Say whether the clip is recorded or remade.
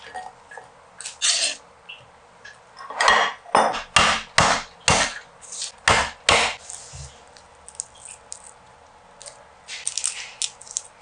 recorded